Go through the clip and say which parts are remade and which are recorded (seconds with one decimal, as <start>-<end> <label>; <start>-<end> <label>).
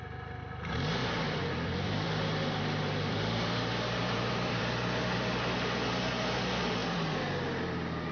0.0-1.0 recorded; 1.0-4.6 remade; 4.6-6.8 recorded; 6.8-7.4 remade; 7.4-8.1 recorded